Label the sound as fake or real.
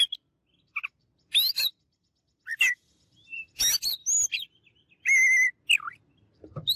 real